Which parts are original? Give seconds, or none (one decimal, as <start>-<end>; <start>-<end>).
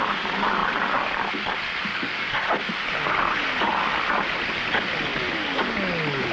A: 0.0-1.9; 2.4-5.1